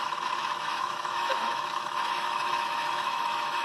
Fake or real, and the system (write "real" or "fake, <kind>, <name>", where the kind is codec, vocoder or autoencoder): fake, autoencoder, DAC-VAE